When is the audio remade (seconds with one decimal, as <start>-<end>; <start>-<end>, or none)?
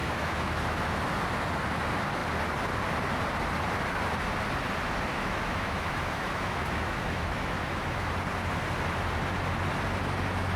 0.0-1.0; 5.1-8.1